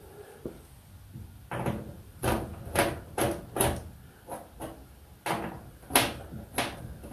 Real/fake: real